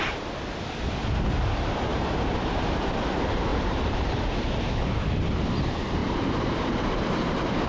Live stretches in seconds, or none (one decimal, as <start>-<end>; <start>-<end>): 0.0-1.9; 3.0-3.5; 5.1-6.0; 7.2-7.7